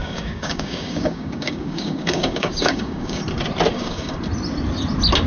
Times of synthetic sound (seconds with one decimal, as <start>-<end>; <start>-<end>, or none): 0.0-3.2; 3.7-4.2